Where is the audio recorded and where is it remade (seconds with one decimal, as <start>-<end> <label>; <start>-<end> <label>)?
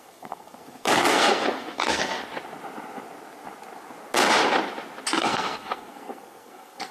0.0-2.2 remade; 2.2-5.2 recorded; 5.2-6.9 remade